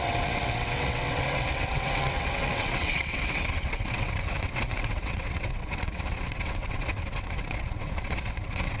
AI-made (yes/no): yes